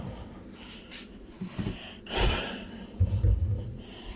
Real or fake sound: real